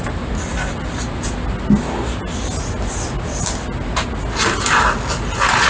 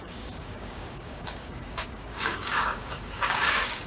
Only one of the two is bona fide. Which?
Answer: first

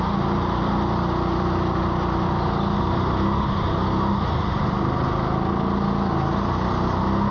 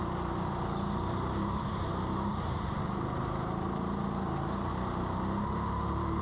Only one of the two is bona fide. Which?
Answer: first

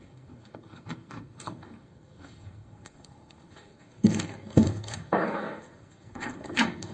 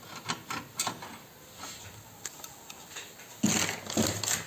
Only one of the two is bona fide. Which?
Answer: second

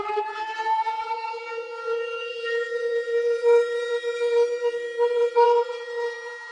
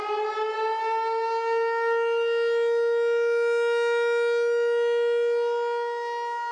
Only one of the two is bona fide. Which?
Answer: second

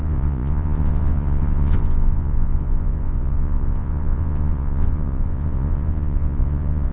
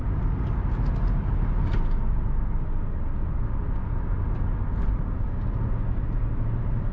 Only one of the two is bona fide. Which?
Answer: second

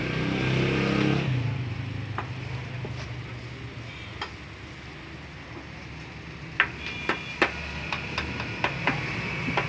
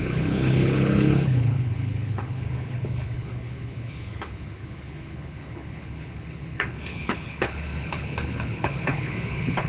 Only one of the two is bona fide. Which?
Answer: first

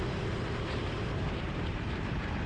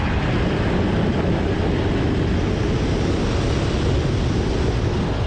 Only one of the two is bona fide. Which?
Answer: second